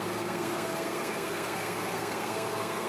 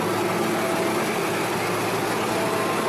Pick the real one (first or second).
second